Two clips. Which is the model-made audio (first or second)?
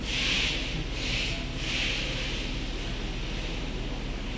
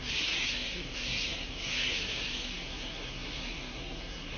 second